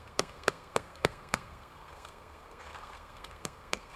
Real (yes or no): no